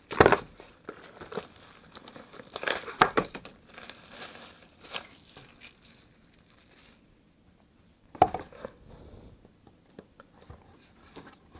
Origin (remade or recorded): remade